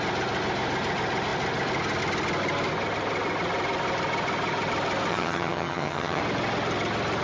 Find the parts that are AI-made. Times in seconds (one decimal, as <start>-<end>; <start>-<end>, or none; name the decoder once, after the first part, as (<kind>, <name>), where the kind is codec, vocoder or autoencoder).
5.1-6.2 (vocoder, HiFi-GAN)